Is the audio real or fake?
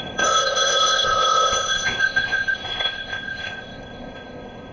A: fake